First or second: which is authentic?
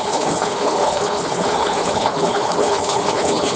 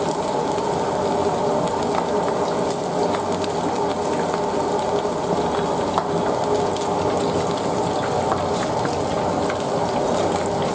second